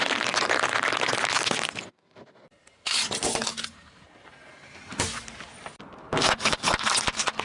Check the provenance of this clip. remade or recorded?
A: recorded